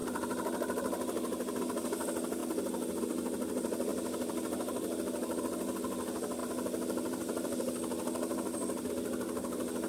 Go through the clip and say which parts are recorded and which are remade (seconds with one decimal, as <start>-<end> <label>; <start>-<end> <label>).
0.0-1.6 remade; 1.6-3.9 recorded; 3.9-5.4 remade; 5.4-6.4 recorded; 6.4-8.9 remade; 8.9-9.9 recorded